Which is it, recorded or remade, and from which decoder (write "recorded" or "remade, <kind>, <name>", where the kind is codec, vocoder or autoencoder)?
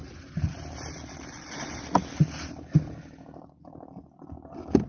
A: recorded